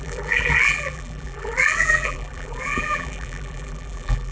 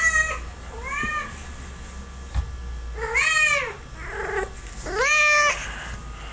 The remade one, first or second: first